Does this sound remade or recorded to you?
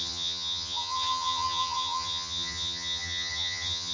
remade